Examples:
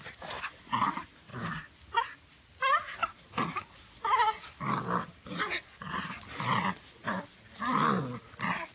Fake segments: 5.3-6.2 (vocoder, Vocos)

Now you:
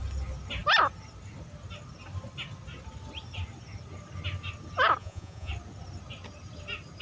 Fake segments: 5.0-5.5 (vocoder, Vocos)

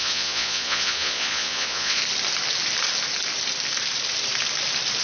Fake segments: 0.0-2.0 (vocoder, Vocos)

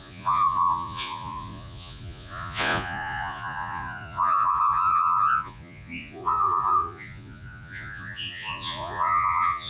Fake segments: 0.0-9.7 (vocoder, Vocos)

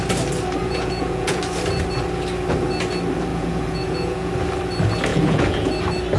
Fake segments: 0.6-1.4 (vocoder, Vocos); 3.3-4.3; 5.1-5.7

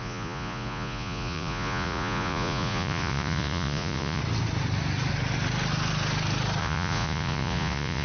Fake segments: 0.0-4.2 (vocoder, Vocos); 6.6-8.0